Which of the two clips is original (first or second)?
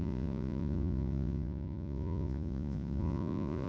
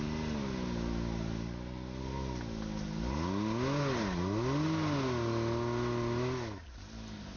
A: second